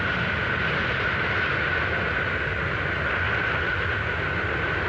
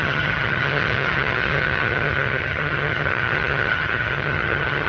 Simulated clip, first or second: second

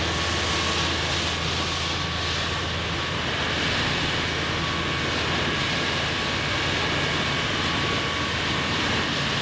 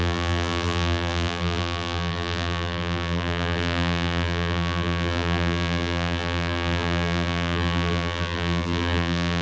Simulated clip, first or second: second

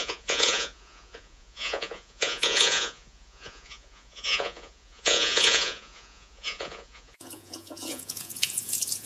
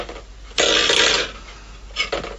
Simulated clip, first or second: first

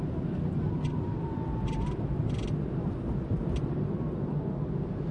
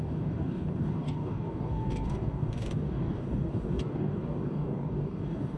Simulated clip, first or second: second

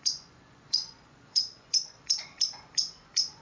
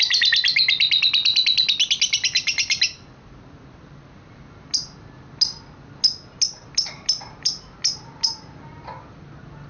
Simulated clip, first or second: first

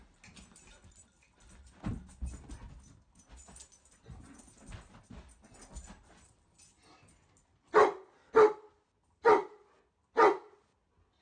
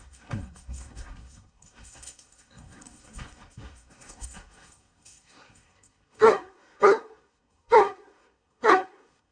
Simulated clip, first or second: second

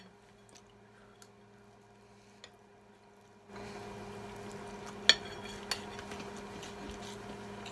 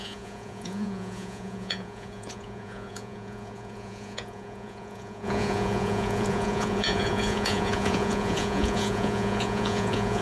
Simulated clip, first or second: second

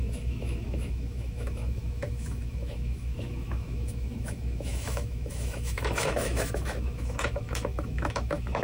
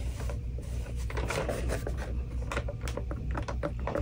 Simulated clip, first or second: first